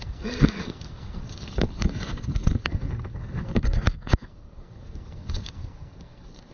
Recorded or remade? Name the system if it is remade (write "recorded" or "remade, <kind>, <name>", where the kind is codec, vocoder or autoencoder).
remade, codec, SNAC